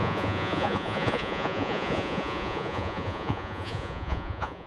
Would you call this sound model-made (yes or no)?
yes